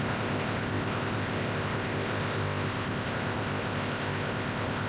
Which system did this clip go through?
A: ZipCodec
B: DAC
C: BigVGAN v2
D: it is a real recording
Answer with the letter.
A